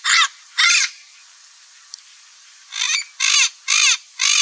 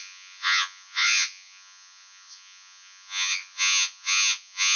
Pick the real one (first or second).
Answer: first